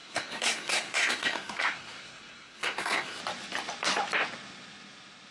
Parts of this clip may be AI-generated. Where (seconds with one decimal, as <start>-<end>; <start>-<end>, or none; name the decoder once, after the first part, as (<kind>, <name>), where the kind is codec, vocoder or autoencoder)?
0.0-3.2 (codec, SNAC)